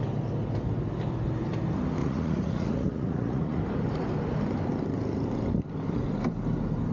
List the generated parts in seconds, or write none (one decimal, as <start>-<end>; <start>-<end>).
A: 2.0-3.6